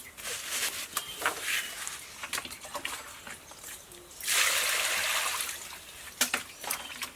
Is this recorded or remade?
recorded